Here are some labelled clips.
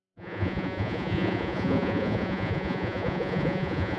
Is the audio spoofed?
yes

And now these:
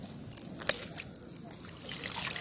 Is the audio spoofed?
no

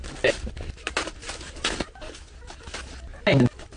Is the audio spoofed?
no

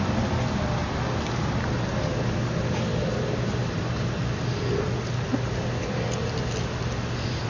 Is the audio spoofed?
no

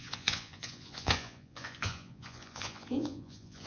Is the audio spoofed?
yes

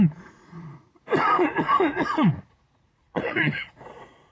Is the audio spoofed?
yes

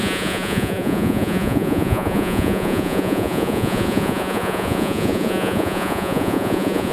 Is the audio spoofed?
yes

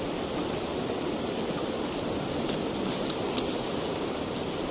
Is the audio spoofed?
no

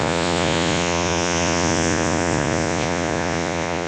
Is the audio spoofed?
yes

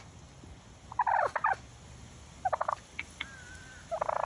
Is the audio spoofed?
no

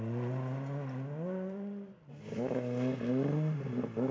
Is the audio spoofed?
no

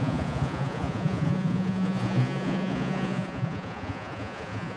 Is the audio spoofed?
yes